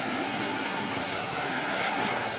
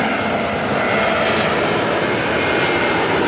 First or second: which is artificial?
first